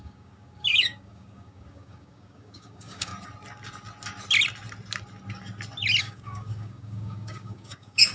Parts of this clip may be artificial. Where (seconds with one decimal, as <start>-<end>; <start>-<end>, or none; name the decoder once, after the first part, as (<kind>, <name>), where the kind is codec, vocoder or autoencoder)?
0.0-3.1 (codec, DAC); 6.0-8.1